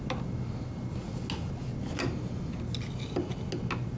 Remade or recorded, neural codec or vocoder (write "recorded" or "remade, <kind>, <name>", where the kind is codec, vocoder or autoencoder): recorded